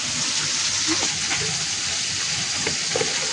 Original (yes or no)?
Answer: yes